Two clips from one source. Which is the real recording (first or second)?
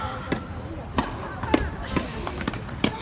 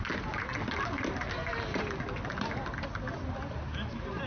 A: second